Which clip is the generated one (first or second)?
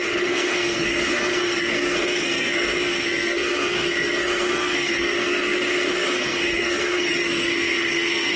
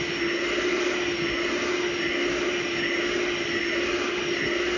first